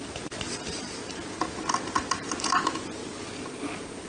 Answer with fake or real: real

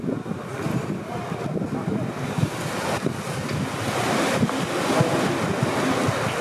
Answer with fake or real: real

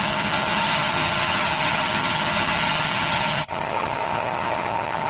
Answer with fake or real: fake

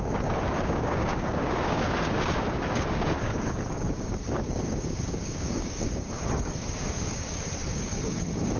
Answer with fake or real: fake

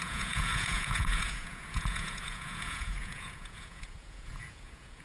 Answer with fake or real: fake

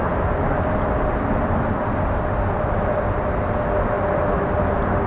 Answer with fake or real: real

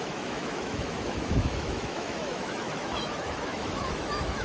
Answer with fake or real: fake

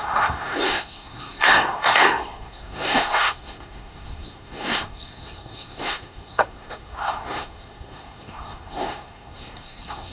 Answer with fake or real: fake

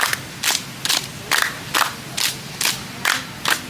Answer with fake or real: real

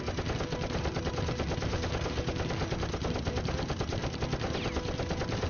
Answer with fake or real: real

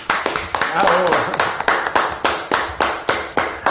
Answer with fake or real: real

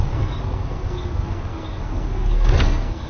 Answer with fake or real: fake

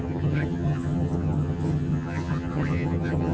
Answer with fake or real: fake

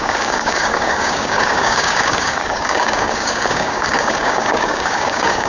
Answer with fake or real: fake